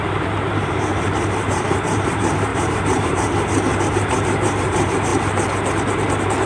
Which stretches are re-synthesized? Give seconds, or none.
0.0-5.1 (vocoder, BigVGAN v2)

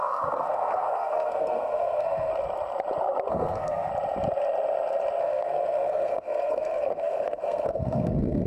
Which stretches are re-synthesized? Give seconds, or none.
0.0-2.3 (codec, SNAC); 3.3-3.9; 5.2-8.5

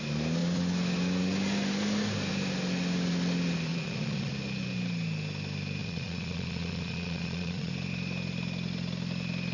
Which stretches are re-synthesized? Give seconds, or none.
3.7-4.3 (vocoder, Vocos); 5.8-7.7

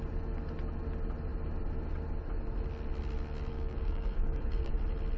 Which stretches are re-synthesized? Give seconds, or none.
3.5-4.7 (codec, DAC)

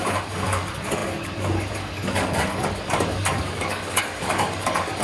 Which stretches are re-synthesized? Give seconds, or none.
0.0-5.0 (codec, DAC)

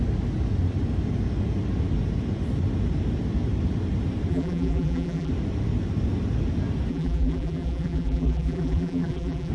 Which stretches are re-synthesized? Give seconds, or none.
4.3-5.3 (vocoder, BigVGAN v2); 6.9-9.5